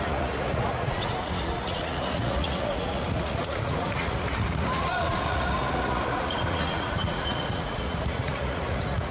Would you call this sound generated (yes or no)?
yes